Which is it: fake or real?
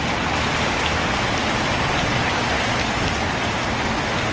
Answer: real